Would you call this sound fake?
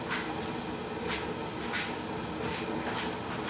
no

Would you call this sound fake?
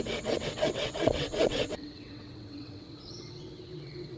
yes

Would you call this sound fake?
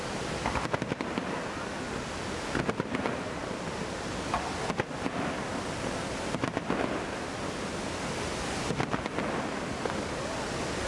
no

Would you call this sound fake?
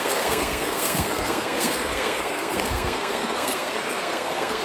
yes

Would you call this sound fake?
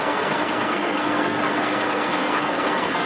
yes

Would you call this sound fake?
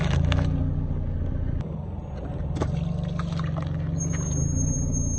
no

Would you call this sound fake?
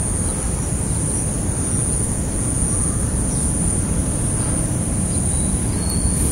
no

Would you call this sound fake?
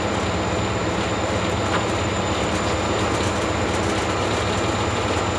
no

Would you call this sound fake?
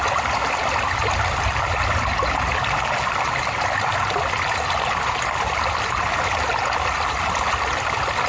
no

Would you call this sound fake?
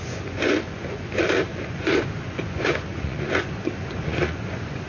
yes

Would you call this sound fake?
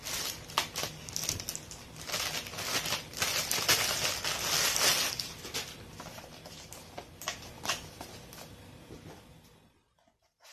no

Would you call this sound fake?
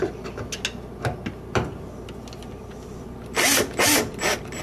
no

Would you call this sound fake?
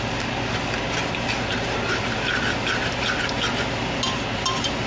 no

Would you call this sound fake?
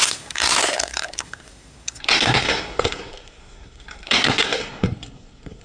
yes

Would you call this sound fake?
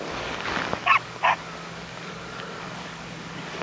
yes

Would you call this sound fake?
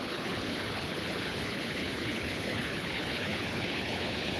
yes